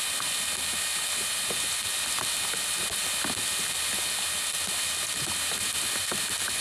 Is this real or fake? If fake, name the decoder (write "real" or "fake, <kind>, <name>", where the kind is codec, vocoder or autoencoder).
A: real